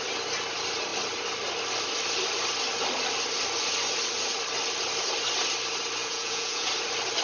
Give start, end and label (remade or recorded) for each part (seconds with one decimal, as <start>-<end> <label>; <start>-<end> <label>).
0.0-6.0 recorded; 6.0-6.7 remade; 6.7-7.2 recorded